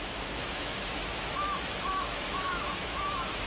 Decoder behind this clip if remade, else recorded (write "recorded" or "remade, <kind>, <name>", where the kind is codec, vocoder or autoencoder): remade, autoencoder, DAC-VAE